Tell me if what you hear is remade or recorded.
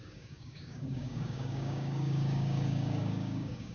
remade